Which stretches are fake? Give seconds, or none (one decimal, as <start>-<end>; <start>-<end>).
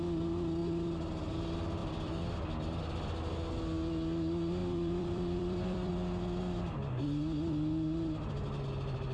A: 1.8-2.8; 4.6-5.9